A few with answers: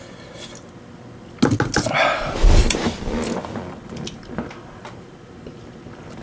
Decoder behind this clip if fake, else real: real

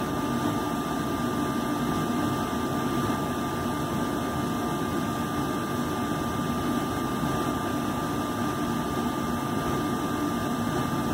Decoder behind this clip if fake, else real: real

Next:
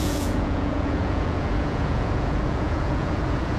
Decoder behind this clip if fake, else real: fake, vocoder, Vocos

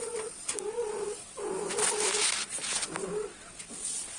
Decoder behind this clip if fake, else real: real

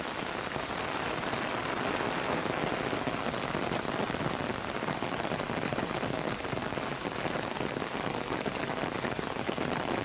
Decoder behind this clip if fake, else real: real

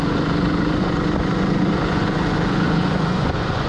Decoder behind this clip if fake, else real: fake, vocoder, Vocos